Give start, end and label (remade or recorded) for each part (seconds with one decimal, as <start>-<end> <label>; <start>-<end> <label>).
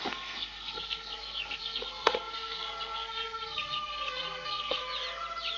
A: 0.0-4.8 remade; 4.8-5.6 recorded